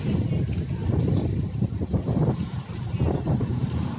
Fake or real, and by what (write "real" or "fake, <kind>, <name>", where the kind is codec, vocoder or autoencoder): real